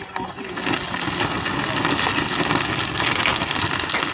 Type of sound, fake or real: real